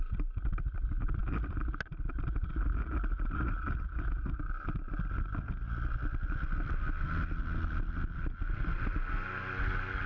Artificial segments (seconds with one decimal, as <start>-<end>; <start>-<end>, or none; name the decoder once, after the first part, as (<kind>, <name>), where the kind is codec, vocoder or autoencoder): none